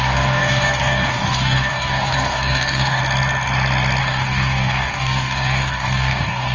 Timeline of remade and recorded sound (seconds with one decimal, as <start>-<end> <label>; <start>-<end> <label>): 0.0-3.0 remade; 3.0-4.0 recorded; 4.0-6.5 remade